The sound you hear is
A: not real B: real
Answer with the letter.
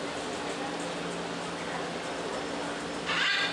B